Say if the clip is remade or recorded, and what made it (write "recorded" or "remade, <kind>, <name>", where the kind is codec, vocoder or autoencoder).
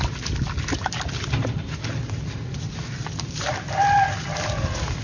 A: recorded